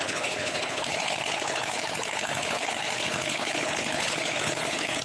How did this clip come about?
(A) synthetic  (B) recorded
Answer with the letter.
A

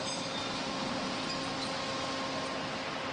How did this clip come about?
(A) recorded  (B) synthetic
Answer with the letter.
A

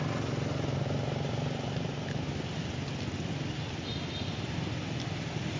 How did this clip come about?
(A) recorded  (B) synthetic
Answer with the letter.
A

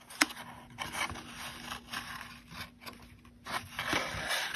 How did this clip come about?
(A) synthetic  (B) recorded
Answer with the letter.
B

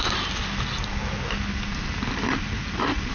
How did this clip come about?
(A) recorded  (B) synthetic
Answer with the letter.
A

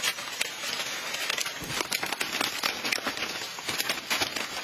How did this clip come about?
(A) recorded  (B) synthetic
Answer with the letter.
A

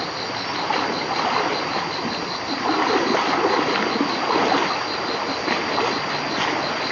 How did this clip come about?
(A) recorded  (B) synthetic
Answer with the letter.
A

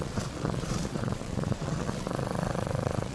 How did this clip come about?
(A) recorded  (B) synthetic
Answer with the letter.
B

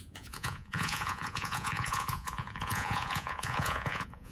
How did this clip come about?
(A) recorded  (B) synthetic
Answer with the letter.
B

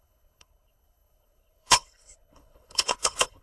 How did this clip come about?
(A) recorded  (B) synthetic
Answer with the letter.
B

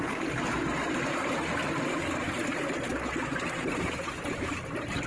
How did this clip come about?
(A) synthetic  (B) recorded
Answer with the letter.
B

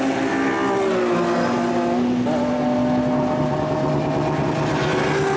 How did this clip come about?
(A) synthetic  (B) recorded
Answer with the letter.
B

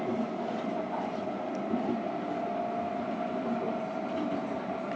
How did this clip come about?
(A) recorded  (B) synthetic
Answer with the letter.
A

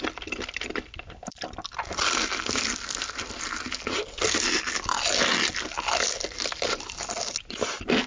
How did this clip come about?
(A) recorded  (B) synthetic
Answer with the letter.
A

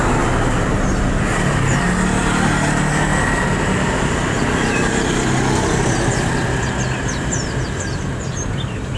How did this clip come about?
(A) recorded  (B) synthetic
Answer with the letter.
A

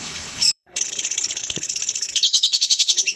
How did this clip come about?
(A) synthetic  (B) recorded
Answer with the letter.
A